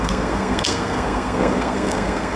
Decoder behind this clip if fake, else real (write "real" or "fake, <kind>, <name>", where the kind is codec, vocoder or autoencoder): fake, codec, SNAC